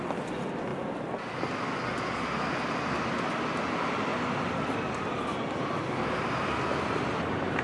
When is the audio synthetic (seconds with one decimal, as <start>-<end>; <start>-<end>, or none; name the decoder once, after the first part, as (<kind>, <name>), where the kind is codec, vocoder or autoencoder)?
none